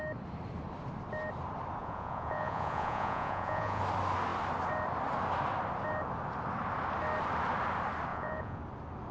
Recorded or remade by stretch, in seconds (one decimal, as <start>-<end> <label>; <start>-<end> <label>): 0.0-1.8 recorded; 1.8-3.8 remade; 3.8-8.1 recorded; 8.1-8.6 remade; 8.6-9.1 recorded